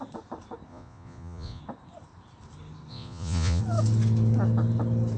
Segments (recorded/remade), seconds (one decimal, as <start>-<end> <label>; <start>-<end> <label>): 0.0-0.7 recorded; 0.7-1.6 remade; 1.6-2.9 recorded; 2.9-3.6 remade; 3.6-5.2 recorded